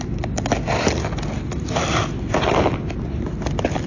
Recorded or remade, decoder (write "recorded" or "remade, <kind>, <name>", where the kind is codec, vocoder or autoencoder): recorded